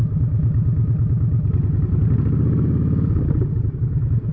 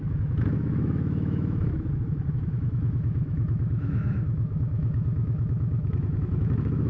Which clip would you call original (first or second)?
first